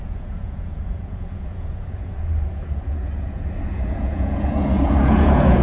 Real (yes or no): no